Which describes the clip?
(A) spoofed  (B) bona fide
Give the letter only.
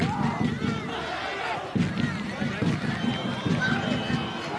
B